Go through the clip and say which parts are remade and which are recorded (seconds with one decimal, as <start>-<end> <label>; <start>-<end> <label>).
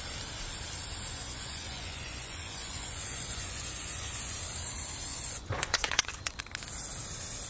0.0-1.1 recorded; 1.1-4.4 remade; 4.4-5.0 recorded; 5.0-6.4 remade; 6.4-7.5 recorded